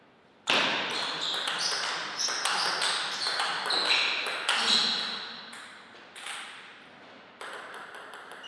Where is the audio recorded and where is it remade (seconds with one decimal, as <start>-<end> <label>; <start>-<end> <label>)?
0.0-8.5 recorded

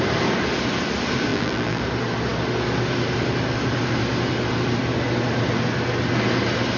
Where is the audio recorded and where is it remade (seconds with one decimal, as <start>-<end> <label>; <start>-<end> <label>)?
0.0-1.3 recorded; 1.3-1.8 remade; 1.8-6.8 recorded

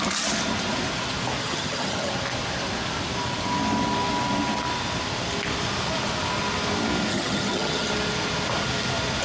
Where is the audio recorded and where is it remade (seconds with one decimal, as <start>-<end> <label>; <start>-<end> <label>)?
0.0-1.4 recorded; 1.4-2.1 remade; 2.1-7.1 recorded; 7.1-7.9 remade; 7.9-9.2 recorded

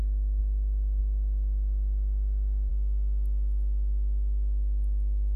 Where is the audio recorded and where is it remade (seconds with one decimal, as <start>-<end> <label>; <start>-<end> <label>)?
0.0-0.4 recorded; 0.4-1.0 remade; 1.0-2.7 recorded; 2.7-5.4 remade